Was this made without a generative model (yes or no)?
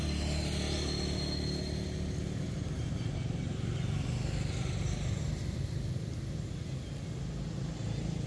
yes